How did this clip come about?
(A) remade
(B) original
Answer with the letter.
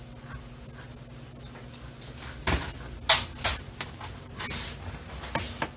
B